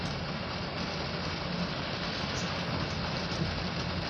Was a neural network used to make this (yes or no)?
no